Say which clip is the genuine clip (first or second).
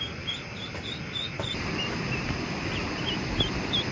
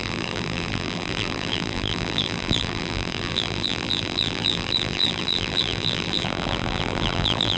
first